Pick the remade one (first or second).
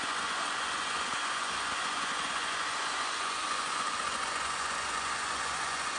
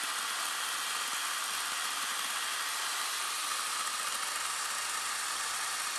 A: first